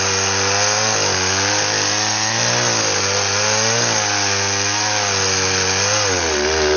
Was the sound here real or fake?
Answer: real